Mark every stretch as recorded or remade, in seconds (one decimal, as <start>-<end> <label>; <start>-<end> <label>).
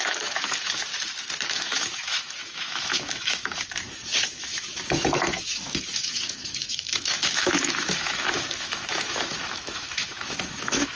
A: 0.0-0.9 remade; 0.9-1.5 recorded; 1.5-11.0 remade